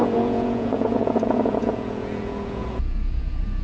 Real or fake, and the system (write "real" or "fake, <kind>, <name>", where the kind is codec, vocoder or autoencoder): fake, vocoder, Vocos